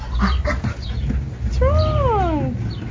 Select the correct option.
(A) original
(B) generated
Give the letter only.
A